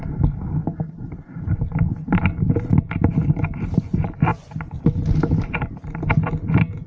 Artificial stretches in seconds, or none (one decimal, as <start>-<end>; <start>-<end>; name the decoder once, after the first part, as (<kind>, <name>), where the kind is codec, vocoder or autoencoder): none